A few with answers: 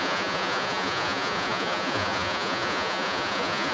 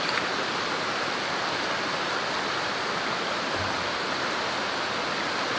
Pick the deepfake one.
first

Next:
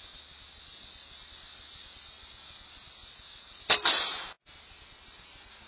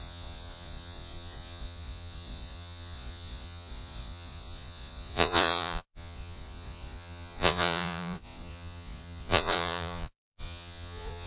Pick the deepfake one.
second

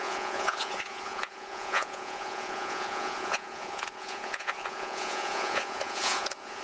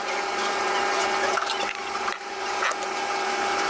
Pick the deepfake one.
first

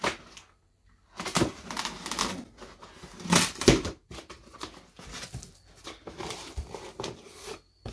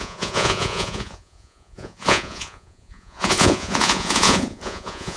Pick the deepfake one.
second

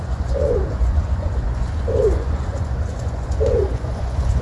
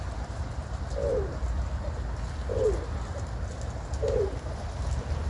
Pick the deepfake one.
first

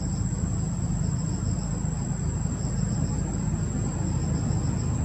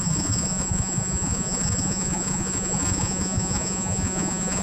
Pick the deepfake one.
second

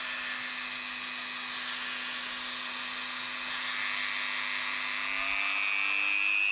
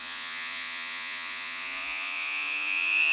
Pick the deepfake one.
second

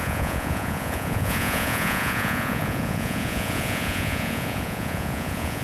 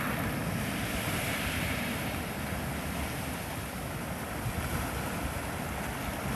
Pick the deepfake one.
first